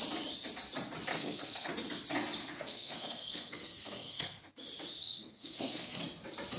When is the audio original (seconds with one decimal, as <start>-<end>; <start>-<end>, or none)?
0.0-1.1; 1.7-2.4; 4.5-5.0; 6.0-6.6